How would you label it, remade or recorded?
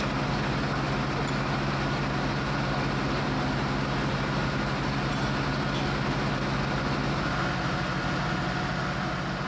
recorded